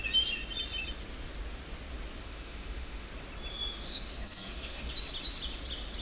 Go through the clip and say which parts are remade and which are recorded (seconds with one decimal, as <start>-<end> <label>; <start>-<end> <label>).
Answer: 0.0-2.2 recorded; 2.2-3.1 remade; 3.1-3.5 recorded; 3.5-4.9 remade; 4.9-6.0 recorded